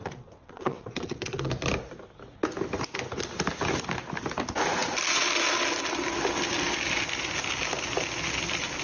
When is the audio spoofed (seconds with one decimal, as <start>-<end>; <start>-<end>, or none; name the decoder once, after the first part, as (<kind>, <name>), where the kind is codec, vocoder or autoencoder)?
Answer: 0.0-1.5 (vocoder, WaveNeXt)